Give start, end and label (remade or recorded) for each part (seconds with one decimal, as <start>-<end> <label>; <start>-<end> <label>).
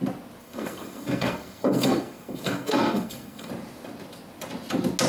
0.0-0.4 recorded; 0.4-3.5 remade; 3.5-5.1 recorded